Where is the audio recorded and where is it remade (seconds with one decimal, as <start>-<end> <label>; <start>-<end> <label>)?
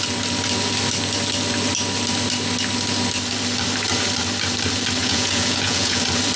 0.0-5.0 recorded; 5.0-6.0 remade; 6.0-6.4 recorded